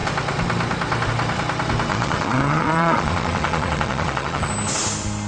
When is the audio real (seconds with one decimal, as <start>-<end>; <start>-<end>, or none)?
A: 0.0-1.9; 4.5-5.3